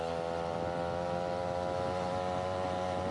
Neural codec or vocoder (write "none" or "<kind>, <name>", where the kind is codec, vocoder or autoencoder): none